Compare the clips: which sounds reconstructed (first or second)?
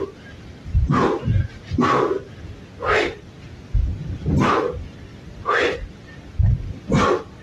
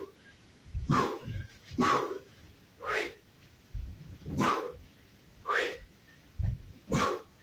second